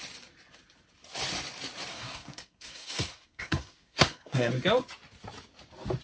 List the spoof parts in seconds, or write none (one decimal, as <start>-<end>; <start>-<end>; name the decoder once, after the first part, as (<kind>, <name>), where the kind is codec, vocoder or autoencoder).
1.9-4.5 (codec, SNAC)